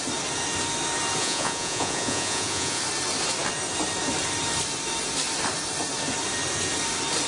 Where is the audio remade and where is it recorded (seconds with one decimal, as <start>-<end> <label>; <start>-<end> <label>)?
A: 0.0-1.2 recorded; 1.2-2.8 remade; 2.8-7.3 recorded